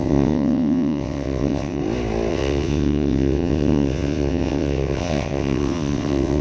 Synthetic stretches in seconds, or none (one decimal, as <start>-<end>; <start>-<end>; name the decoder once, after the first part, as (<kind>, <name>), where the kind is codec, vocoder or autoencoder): 0.0-1.8 (vocoder, WaveNeXt); 2.3-6.4